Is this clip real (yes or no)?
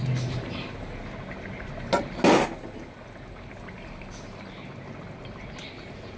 yes